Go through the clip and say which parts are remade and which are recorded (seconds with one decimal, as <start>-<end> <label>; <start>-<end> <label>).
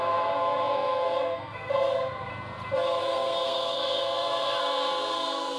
0.0-2.3 remade; 2.3-3.0 recorded; 3.0-5.6 remade